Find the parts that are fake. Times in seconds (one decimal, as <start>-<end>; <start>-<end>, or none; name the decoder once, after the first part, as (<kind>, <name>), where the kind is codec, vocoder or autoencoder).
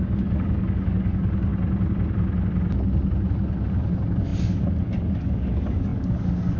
0.0-1.5 (codec, DAC); 3.6-6.6